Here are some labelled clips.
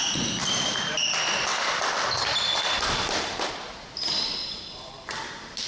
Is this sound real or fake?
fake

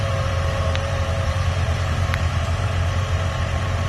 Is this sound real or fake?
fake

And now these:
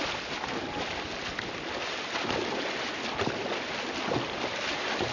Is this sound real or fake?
real